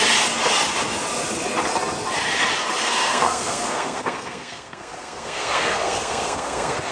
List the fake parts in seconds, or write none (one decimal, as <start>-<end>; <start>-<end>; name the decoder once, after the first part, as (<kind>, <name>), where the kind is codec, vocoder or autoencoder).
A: 2.8-6.9 (codec, SNAC)